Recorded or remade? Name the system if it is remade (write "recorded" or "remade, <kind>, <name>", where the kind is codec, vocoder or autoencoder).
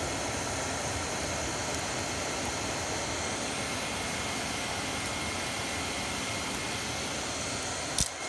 recorded